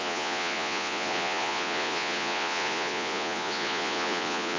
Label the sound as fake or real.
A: fake